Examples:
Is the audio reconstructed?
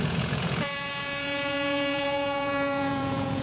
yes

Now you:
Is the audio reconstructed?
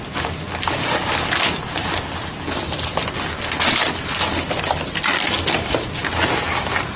no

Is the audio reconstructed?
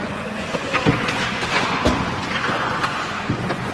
yes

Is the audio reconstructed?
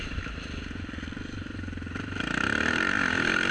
no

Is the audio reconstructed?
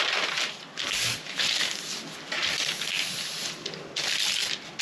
no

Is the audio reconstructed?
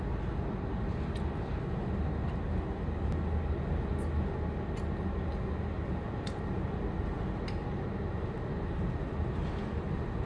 no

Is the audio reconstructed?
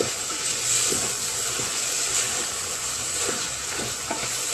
yes